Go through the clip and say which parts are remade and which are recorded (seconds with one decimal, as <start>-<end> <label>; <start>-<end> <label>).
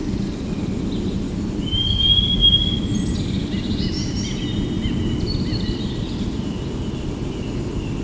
0.0-8.0 recorded